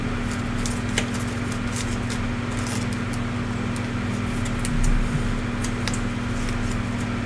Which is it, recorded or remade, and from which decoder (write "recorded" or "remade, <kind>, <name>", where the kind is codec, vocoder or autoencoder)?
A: recorded